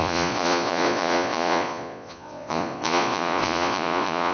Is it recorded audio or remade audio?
remade